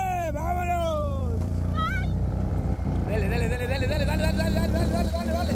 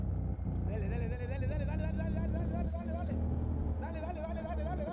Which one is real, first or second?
second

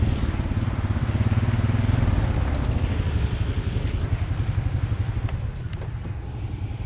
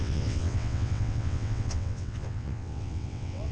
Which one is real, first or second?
first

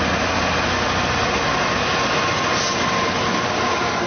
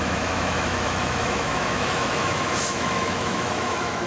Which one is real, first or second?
first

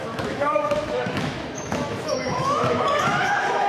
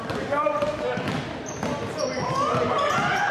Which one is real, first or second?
second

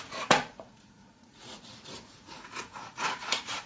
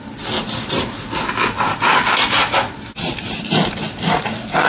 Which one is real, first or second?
second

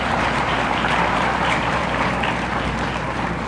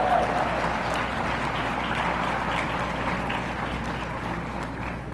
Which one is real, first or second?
second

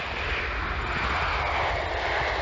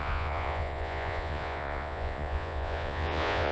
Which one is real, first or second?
first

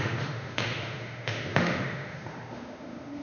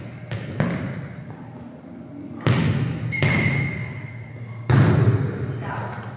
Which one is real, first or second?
second